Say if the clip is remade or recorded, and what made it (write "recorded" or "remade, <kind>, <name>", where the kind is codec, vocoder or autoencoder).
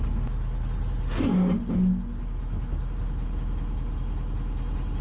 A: recorded